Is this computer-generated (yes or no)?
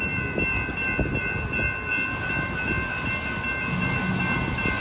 no